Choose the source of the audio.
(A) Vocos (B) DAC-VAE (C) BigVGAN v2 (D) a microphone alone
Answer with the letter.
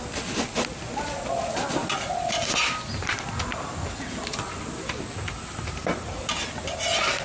D